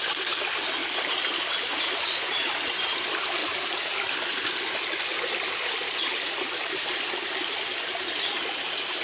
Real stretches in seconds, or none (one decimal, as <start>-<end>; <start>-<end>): 0.0-9.0